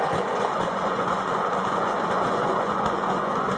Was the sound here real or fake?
fake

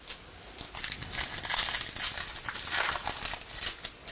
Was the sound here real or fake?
real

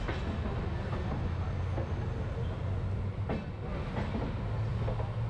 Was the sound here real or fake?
real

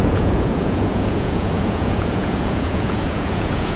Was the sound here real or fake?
fake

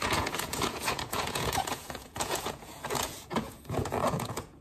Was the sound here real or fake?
fake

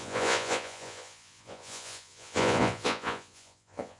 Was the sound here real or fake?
fake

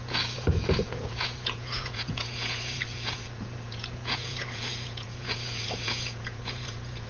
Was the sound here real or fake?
fake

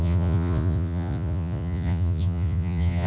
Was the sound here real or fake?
fake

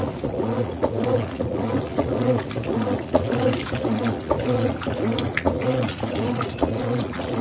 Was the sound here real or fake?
fake